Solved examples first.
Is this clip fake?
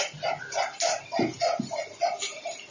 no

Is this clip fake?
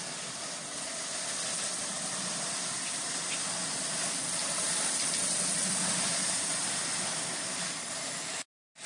no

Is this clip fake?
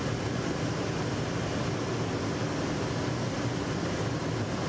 no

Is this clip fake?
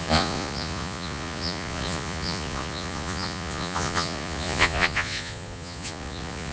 yes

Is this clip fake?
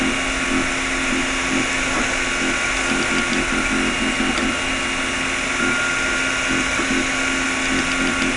no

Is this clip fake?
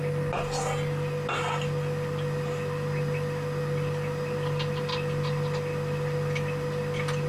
no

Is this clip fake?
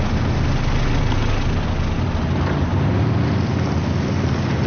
no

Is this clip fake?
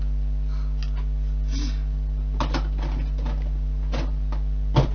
no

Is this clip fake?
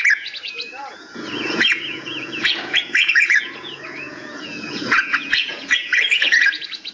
yes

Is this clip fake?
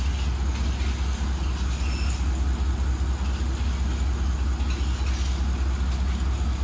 no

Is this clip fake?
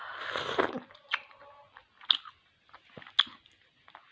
no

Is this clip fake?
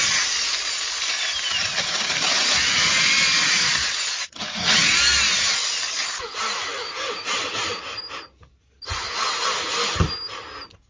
no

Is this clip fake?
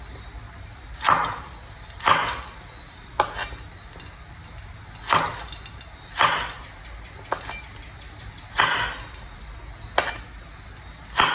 no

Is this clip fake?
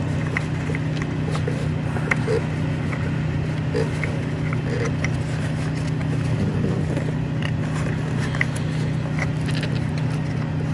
no